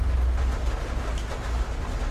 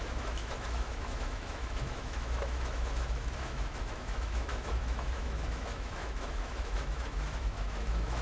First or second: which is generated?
second